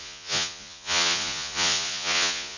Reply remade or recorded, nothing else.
remade